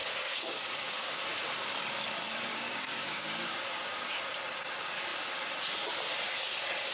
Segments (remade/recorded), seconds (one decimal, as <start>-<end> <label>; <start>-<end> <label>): 0.0-1.2 remade; 1.2-2.5 recorded; 2.5-3.6 remade; 3.6-6.9 recorded